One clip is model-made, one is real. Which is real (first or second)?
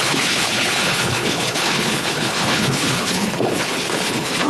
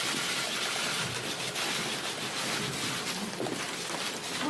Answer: second